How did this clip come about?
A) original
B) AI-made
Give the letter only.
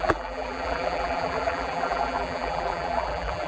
B